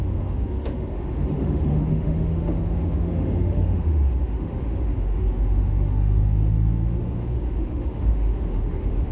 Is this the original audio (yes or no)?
no